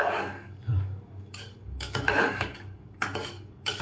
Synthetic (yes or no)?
yes